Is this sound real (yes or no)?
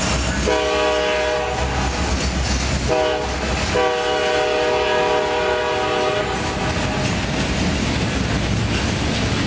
yes